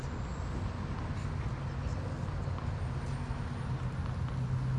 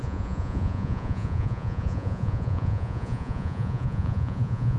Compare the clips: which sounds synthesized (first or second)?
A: second